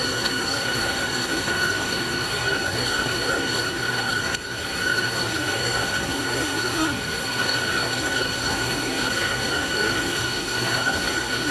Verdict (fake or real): fake